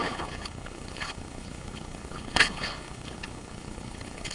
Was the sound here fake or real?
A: fake